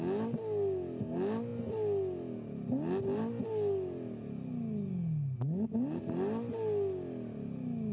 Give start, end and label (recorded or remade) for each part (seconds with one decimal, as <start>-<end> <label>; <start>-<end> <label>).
0.0-7.9 recorded

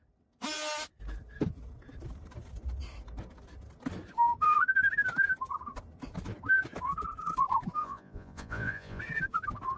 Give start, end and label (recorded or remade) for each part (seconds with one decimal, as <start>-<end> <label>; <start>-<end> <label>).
0.0-7.8 recorded; 7.8-9.0 remade; 9.0-9.8 recorded

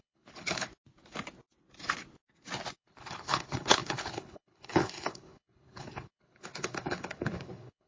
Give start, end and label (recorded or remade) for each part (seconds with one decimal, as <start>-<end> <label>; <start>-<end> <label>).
0.0-0.7 remade; 0.7-2.7 recorded; 2.7-7.9 remade

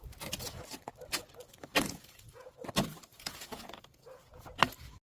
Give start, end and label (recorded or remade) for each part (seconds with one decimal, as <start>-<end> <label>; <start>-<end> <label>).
0.0-1.7 recorded; 1.7-2.5 remade; 2.5-3.1 recorded; 3.1-4.5 remade; 4.5-5.0 recorded